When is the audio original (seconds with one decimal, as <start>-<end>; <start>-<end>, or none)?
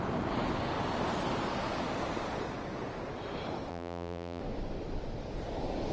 0.0-3.7; 4.4-5.9